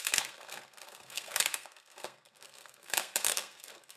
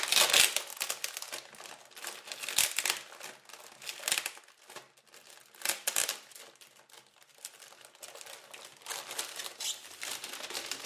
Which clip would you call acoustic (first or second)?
second